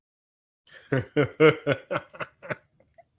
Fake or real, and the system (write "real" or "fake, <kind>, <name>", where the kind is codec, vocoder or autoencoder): real